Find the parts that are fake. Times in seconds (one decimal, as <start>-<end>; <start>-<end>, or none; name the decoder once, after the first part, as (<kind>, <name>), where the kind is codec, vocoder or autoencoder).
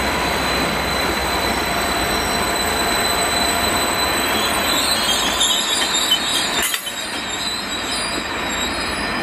none